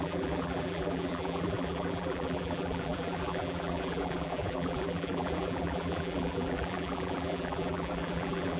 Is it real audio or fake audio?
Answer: fake